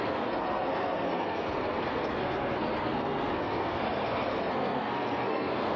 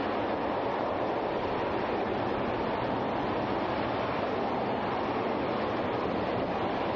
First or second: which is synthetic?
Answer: first